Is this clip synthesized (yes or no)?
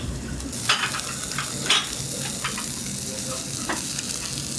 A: no